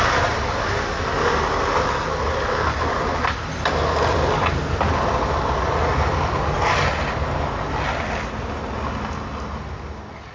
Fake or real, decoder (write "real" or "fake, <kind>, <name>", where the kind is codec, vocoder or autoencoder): real